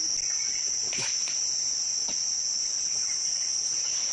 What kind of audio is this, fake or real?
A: real